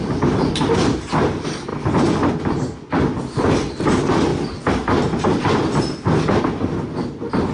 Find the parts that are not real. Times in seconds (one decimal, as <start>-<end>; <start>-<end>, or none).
1.7-2.3